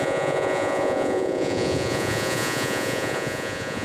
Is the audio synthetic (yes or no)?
yes